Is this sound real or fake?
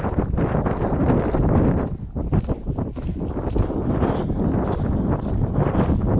real